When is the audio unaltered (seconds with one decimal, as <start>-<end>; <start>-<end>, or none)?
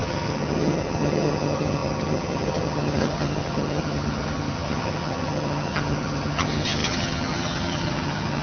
none